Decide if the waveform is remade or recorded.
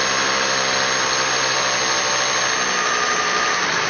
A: recorded